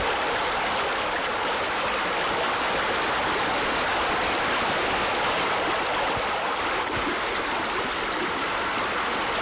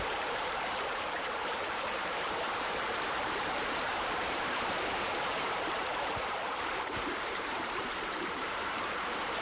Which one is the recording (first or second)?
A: first